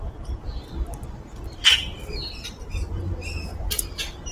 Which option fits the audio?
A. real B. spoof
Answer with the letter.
B